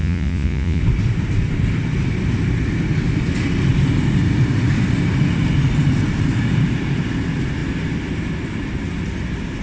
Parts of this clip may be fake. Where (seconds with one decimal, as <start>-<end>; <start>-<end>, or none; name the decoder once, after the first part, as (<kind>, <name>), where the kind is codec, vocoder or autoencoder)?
0.0-0.8 (vocoder, Vocos)